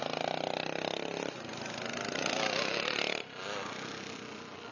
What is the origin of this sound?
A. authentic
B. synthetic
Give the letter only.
A